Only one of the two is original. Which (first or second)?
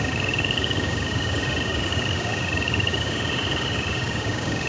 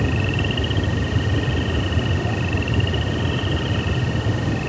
second